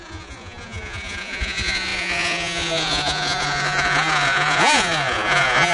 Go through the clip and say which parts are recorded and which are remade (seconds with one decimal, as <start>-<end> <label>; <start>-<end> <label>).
0.0-5.7 remade